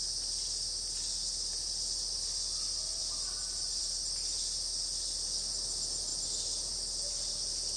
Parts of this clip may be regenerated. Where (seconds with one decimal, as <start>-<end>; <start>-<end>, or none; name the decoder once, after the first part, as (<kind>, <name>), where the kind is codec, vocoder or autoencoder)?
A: none